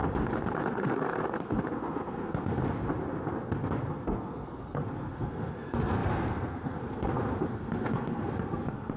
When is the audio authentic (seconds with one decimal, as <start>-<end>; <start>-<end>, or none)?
0.0-0.6; 2.6-3.9